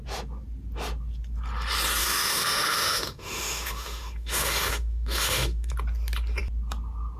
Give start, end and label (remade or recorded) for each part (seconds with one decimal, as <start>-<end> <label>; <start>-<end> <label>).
0.0-2.0 recorded; 2.0-5.7 remade; 5.7-7.2 recorded